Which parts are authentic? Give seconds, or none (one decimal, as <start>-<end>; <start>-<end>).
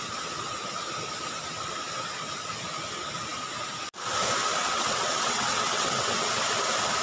0.0-4.6; 6.4-7.0